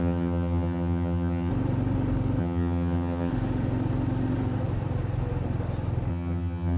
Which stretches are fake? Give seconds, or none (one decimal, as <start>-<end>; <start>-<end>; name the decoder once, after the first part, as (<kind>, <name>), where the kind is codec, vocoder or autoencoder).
0.0-1.5 (vocoder, HiFi-GAN); 2.4-3.3; 6.1-6.8